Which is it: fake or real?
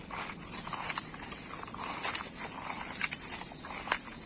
real